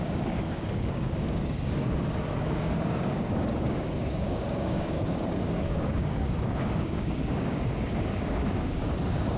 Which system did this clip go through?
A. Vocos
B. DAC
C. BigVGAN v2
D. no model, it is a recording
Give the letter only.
B